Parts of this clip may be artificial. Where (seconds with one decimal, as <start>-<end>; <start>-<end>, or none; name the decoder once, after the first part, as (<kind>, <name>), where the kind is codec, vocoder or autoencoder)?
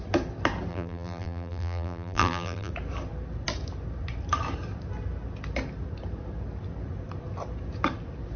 0.7-2.7 (vocoder, BigVGAN v2)